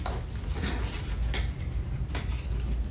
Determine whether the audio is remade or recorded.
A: recorded